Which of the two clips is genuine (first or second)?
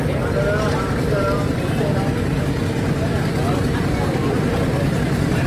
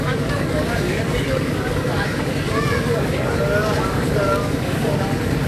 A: first